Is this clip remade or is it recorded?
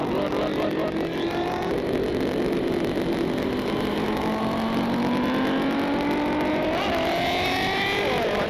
recorded